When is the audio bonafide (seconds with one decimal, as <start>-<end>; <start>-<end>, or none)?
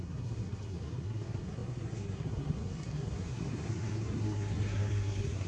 none